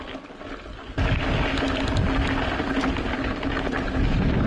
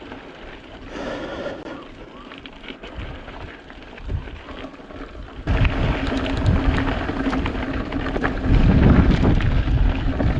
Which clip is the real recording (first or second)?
first